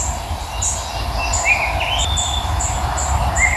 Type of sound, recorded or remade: recorded